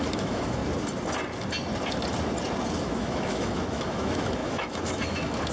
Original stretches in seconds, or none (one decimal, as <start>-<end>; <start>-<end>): 0.6-2.8